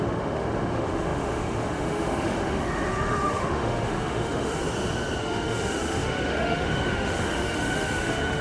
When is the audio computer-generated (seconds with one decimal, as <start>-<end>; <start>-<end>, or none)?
0.0-4.6; 5.2-8.4